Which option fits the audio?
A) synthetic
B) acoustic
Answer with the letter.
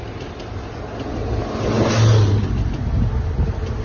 B